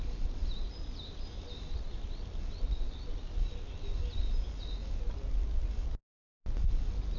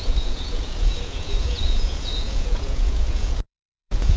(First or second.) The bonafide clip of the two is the first